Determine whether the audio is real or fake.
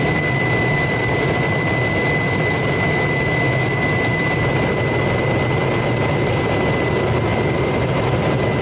real